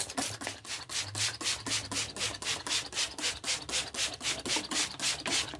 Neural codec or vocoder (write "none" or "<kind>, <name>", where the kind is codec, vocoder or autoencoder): none